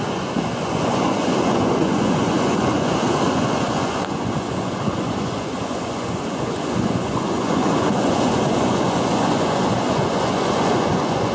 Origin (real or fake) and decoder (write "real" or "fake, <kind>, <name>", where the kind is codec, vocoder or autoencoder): fake, vocoder, Vocos